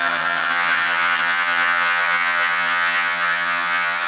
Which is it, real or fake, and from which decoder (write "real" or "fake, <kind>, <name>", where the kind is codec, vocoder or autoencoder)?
fake, vocoder, HiFi-GAN